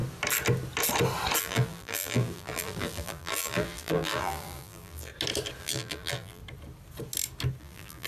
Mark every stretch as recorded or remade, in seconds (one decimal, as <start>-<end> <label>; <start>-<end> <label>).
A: 0.0-1.4 recorded; 1.4-5.1 remade; 5.1-5.6 recorded; 5.6-6.4 remade; 6.4-7.6 recorded; 7.6-8.1 remade